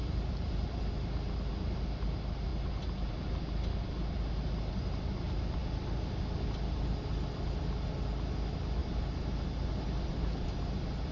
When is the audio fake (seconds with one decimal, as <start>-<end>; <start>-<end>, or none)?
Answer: 0.0-0.8